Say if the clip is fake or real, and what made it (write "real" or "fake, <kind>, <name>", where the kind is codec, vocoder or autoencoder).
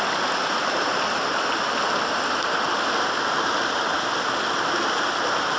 real